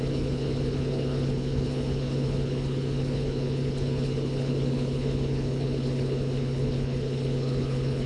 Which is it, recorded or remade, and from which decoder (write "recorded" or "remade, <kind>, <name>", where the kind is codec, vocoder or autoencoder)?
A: remade, codec, HILCodec